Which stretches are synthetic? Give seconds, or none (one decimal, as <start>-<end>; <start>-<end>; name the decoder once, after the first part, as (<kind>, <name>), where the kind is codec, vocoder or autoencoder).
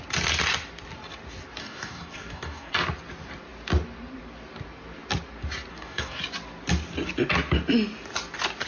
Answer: 1.6-2.7 (codec, DAC); 5.7-6.2